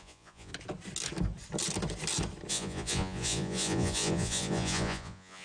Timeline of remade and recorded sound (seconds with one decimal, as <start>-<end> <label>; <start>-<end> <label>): 0.0-0.5 remade; 0.5-2.5 recorded; 2.5-5.4 remade